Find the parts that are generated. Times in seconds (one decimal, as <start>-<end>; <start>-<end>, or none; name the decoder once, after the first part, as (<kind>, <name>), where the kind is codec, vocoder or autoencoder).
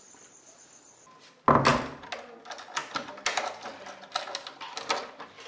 none